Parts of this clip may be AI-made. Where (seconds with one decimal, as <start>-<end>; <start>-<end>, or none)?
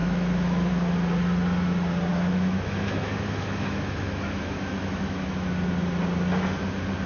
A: 0.0-0.7; 2.1-5.5